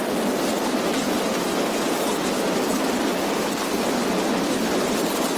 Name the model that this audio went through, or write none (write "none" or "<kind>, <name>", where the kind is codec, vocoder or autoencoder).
none